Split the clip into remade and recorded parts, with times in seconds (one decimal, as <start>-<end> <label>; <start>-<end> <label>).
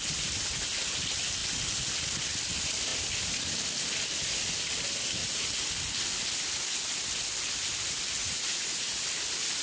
0.0-5.2 recorded; 5.2-5.7 remade; 5.7-8.2 recorded; 8.2-9.0 remade; 9.0-9.6 recorded